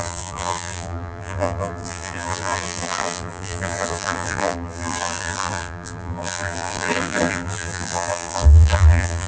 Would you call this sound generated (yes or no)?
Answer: yes